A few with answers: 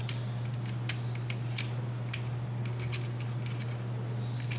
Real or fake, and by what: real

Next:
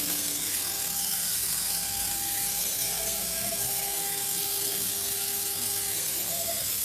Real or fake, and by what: fake, codec, SNAC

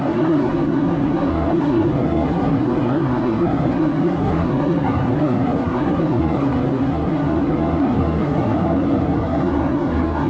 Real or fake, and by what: fake, codec, SNAC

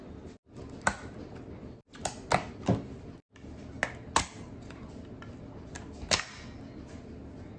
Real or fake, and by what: real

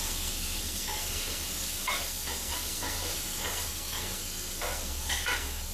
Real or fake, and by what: fake, codec, SNAC